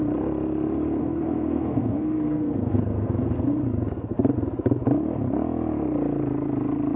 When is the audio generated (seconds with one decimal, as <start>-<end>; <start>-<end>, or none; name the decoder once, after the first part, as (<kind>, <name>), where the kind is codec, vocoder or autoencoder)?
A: 1.0-3.5 (codec, SNAC)